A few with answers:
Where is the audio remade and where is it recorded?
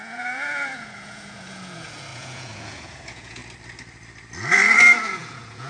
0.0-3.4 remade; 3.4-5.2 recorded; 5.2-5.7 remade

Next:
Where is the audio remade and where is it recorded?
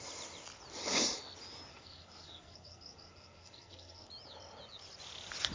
0.0-1.7 recorded; 1.7-4.1 remade; 4.1-5.5 recorded